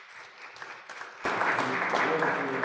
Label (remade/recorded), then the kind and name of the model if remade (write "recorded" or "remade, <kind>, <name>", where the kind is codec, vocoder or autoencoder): recorded